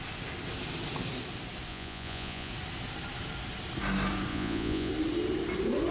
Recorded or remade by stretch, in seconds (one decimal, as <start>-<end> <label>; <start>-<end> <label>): 0.0-1.7 recorded; 1.7-2.5 remade; 2.5-4.3 recorded; 4.3-4.9 remade; 4.9-5.9 recorded